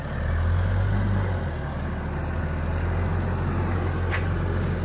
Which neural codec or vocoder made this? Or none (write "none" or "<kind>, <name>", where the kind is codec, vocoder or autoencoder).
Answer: none